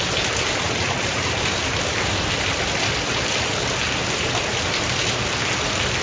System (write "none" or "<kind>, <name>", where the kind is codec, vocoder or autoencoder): none